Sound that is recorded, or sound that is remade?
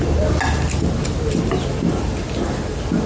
recorded